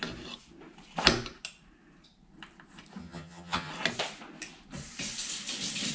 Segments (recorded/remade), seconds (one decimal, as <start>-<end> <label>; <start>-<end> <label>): 0.0-3.0 recorded; 3.0-3.7 remade; 3.7-5.9 recorded